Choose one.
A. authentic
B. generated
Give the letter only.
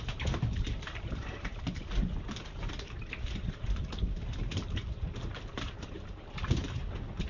B